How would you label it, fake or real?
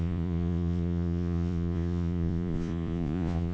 fake